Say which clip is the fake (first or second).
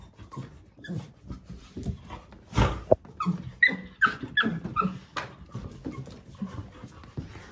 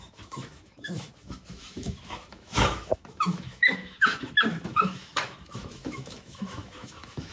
second